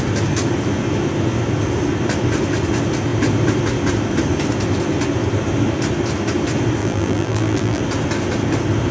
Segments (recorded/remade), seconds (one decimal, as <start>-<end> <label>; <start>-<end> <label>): 0.0-6.8 recorded; 6.8-7.8 remade; 7.8-8.9 recorded